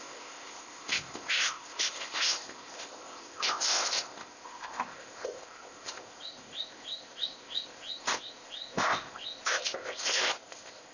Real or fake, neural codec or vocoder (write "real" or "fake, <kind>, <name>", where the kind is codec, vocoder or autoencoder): fake, codec, ZipCodec